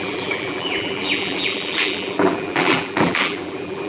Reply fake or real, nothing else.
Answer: fake